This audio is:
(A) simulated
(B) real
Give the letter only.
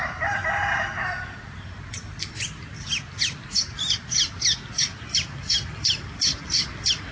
B